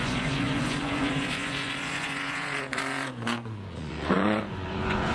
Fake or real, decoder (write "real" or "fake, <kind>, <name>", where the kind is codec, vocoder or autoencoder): fake, vocoder, Vocos